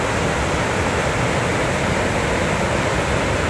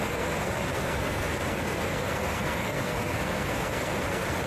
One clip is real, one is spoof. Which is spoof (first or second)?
second